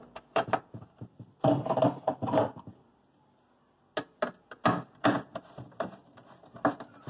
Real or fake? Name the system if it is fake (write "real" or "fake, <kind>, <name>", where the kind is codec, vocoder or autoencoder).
real